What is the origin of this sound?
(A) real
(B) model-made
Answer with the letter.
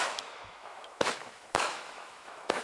B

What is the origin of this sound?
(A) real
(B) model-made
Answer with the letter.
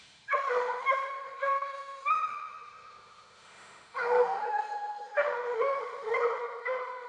B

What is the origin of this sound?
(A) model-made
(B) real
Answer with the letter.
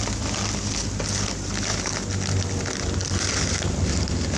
B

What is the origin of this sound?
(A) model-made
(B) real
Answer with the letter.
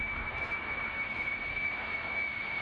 A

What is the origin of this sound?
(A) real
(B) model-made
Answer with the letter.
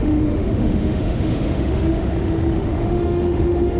B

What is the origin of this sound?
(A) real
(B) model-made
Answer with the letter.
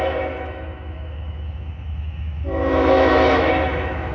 B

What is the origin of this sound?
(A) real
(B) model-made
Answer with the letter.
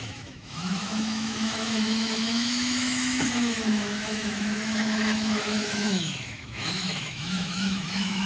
B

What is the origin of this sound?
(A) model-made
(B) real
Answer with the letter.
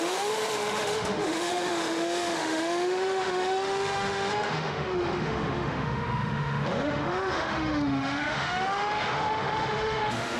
A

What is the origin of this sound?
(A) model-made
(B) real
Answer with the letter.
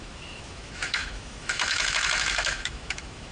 A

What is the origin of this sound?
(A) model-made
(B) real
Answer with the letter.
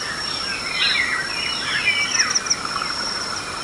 B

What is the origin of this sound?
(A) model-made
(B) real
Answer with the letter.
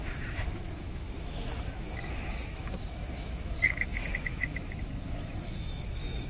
A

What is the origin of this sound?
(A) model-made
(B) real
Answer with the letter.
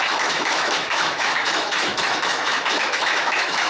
A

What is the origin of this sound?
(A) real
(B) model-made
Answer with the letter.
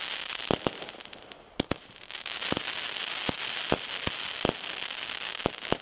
A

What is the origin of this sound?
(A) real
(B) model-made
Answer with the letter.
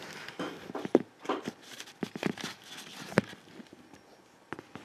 A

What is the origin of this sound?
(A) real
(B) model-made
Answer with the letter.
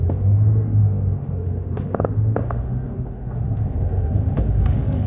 B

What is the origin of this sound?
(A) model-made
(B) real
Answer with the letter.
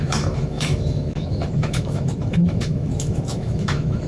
A